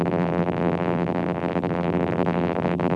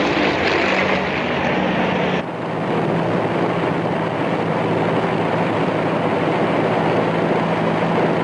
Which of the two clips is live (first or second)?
second